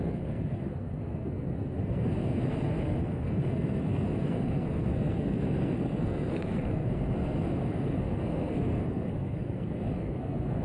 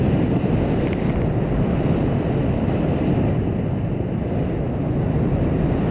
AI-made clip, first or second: first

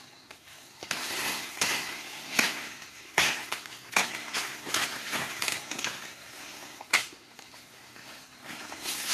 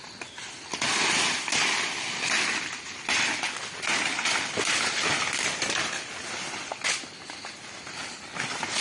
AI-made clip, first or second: first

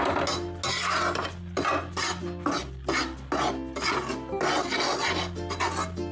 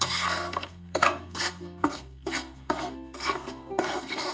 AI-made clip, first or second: second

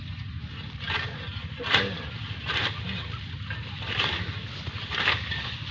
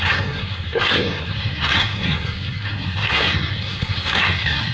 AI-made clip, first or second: second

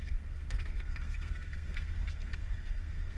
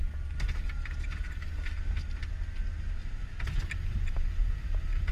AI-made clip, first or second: first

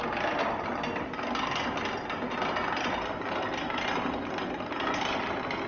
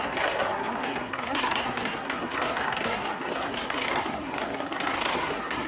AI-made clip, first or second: second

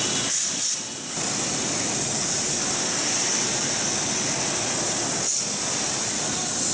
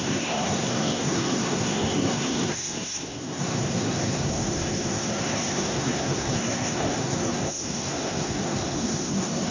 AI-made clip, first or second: second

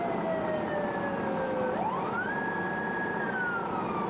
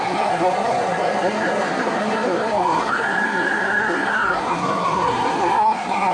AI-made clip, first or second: second